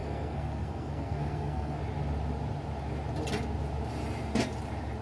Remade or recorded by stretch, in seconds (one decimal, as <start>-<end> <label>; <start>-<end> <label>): 0.0-1.8 remade; 1.8-5.0 recorded